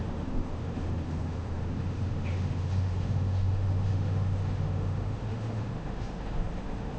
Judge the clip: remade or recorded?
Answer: remade